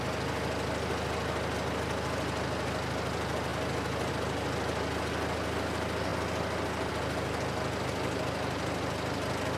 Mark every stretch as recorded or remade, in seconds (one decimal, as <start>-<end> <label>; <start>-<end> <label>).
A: 0.0-9.6 recorded